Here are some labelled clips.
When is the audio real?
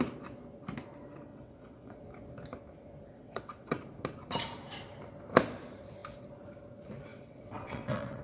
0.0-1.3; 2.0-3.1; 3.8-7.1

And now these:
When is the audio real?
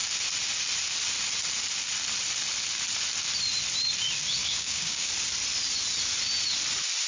0.0-4.4; 5.1-7.1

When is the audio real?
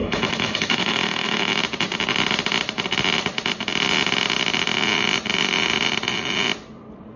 1.6-7.2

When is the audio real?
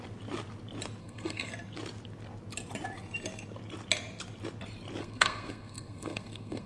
0.0-1.0; 1.5-5.0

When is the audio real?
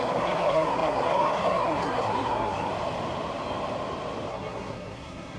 2.7-4.3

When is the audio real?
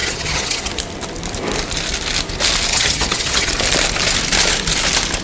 0.7-2.7; 3.5-5.2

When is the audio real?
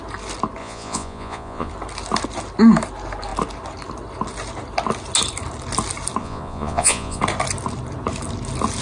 0.0-0.6; 1.7-6.2; 7.2-8.8